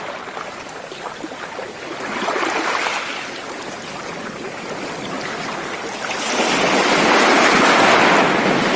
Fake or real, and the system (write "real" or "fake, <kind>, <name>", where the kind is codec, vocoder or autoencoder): real